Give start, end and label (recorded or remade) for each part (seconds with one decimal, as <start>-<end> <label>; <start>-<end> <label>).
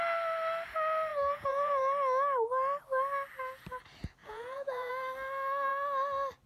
0.0-1.1 recorded; 1.1-1.8 remade; 1.8-4.2 recorded; 4.2-4.9 remade; 4.9-6.5 recorded